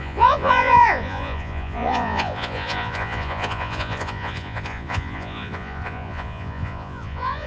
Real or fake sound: fake